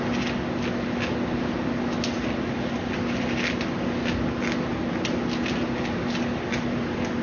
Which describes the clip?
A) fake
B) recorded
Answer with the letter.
B